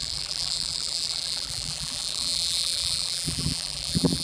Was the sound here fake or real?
fake